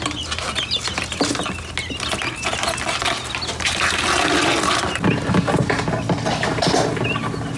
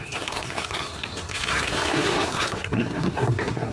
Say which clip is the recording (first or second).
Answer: first